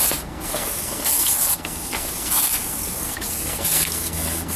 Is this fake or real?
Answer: fake